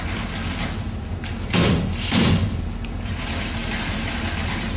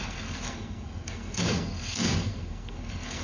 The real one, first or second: first